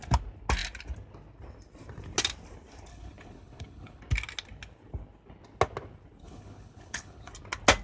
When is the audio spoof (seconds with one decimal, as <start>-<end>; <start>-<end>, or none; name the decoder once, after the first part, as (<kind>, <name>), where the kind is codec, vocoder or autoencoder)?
2.9-4.0 (codec, HILCodec); 6.2-7.3